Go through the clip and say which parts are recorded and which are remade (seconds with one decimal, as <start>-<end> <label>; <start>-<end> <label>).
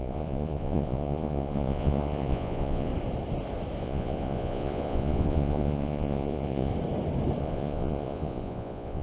0.0-2.9 remade; 2.9-3.8 recorded; 3.8-6.7 remade; 6.7-7.4 recorded; 7.4-9.0 remade